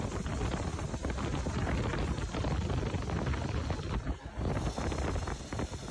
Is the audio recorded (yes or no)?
yes